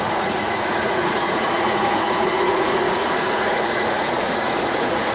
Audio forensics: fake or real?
fake